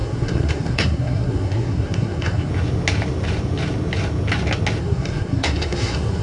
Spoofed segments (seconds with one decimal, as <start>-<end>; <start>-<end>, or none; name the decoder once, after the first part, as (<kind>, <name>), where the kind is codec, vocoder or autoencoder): 0.0-2.5 (codec, SNAC); 4.8-6.2